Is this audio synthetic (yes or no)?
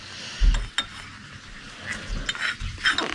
no